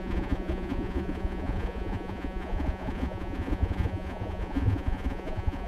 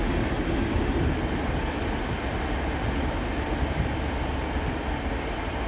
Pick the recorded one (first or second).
second